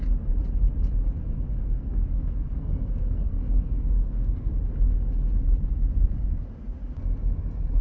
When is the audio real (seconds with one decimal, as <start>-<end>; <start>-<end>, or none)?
0.0-1.6; 4.5-7.8